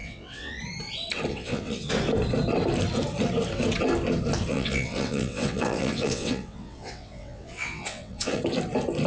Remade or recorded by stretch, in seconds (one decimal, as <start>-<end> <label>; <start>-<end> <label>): 0.0-0.6 remade; 0.6-1.3 recorded; 1.3-1.9 remade; 1.9-4.5 recorded; 4.5-8.4 remade; 8.4-9.1 recorded